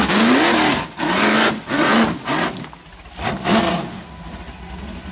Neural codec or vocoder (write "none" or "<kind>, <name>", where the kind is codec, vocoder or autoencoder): none